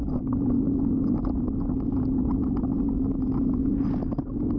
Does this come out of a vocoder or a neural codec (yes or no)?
no